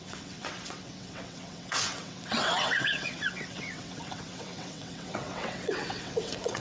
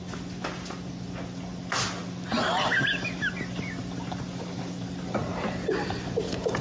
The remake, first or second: first